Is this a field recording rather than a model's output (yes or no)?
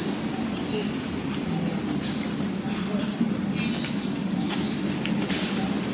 yes